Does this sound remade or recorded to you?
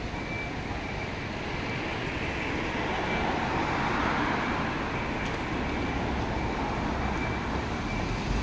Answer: recorded